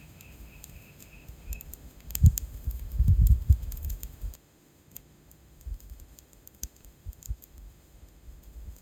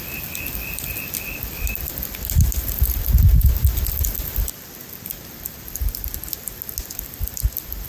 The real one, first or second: second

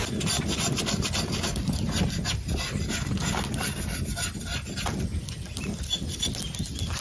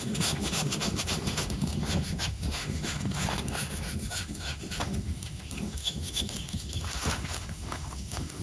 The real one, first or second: first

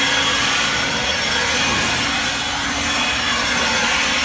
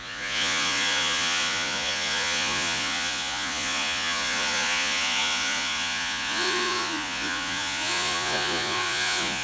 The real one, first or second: first